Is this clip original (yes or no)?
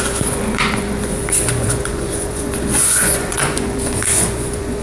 no